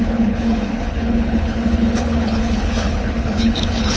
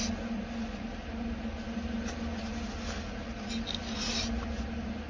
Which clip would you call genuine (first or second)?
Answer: second